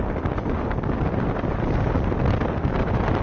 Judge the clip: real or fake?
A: real